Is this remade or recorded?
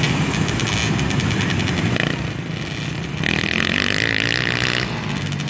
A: recorded